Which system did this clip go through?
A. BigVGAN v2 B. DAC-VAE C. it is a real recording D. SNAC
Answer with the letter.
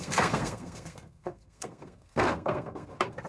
D